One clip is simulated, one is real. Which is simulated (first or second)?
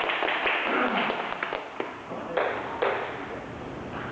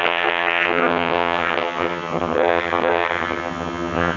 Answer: second